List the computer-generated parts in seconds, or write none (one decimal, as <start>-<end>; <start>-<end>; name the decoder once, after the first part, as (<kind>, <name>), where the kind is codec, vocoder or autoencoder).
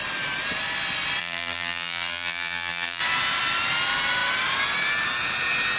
1.2-3.0 (vocoder, BigVGAN v2)